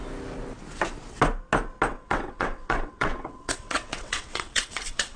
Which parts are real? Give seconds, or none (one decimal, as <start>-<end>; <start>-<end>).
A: 0.0-1.9